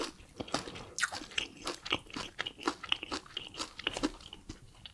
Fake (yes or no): no